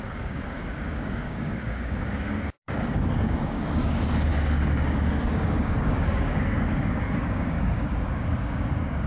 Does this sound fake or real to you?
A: fake